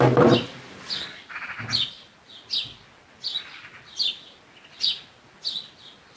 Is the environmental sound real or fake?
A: real